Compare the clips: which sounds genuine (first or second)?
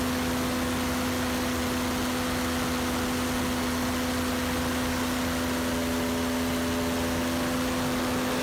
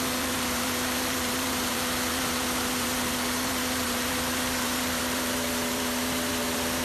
first